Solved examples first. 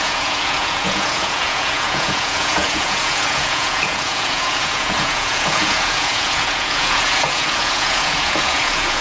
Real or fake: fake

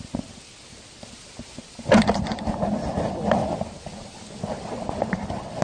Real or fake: real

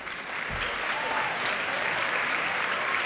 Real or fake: real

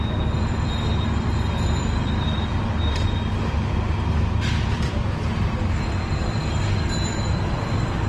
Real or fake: fake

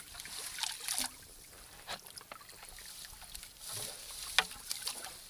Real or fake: real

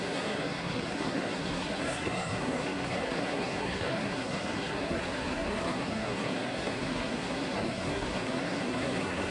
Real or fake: fake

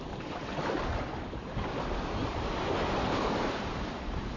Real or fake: real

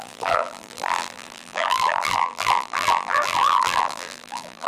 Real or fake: fake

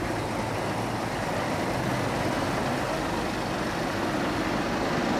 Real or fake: real